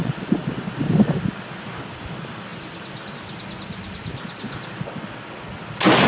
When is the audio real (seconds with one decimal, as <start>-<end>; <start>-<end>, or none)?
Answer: 0.5-6.1